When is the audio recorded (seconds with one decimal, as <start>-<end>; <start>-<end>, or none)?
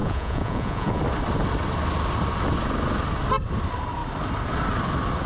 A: 1.0-5.3